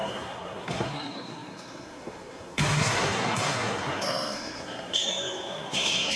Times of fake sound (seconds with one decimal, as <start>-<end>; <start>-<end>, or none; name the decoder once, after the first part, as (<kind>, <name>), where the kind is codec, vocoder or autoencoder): 0.0-6.2 (codec, SNAC)